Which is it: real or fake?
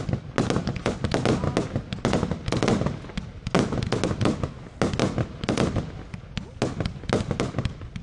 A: real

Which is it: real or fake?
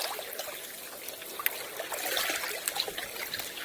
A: real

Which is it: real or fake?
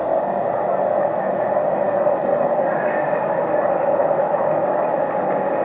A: real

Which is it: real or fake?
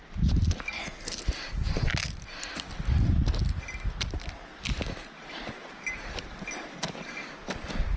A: real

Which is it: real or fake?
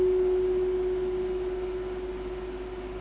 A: real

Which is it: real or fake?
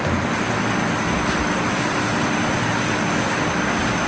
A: real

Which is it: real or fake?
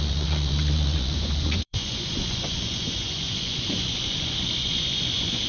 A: fake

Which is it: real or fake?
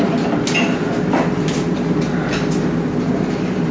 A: real